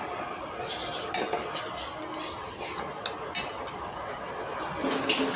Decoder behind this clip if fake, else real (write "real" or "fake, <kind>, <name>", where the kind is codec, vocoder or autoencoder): real